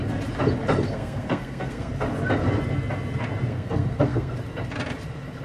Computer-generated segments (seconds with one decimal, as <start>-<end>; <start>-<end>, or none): 0.9-1.9; 3.5-4.3